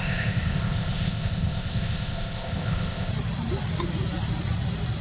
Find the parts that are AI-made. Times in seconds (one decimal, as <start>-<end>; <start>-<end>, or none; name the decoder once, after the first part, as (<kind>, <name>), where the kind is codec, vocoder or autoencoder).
0.0-3.1 (codec, ZipCodec)